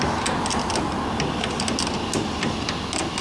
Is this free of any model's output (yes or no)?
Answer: yes